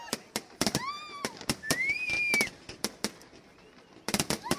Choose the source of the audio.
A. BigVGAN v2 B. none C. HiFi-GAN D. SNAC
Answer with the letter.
B